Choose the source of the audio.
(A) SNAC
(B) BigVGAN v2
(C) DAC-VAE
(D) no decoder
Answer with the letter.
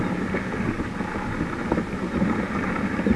D